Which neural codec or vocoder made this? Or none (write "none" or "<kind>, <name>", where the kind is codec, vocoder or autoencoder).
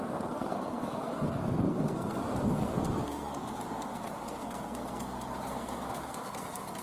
codec, SNAC